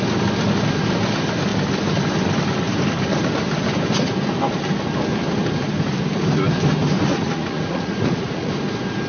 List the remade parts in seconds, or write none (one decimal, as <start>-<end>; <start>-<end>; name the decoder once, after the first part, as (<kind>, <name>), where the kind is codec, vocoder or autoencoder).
7.1-8.5 (vocoder, Vocos)